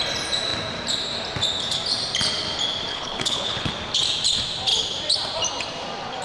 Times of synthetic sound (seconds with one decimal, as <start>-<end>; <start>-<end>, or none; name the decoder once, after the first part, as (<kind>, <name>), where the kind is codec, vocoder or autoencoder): 2.9-3.7 (codec, HILCodec)